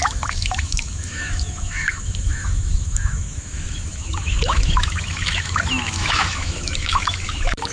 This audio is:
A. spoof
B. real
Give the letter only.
A